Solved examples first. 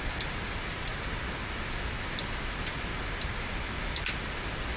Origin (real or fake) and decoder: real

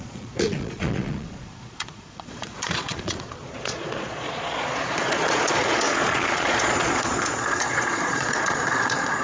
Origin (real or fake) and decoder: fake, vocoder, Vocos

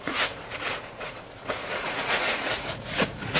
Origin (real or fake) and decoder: fake, vocoder, Vocos